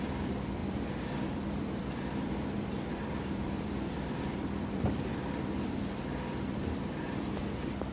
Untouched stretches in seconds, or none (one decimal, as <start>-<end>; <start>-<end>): none